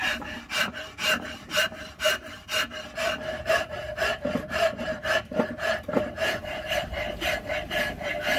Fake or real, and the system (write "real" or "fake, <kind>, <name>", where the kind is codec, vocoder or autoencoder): fake, vocoder, BigVGAN v2